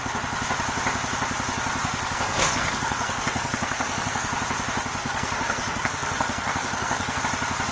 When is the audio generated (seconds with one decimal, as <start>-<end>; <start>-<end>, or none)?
1.8-4.3; 5.0-7.2